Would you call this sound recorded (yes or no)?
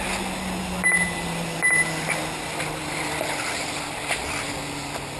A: yes